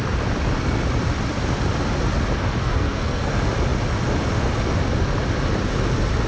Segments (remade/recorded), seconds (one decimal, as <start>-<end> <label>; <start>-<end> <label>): 0.0-2.6 recorded; 2.6-3.3 remade; 3.3-6.3 recorded